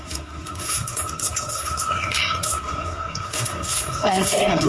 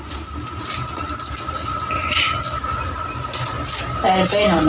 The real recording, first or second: second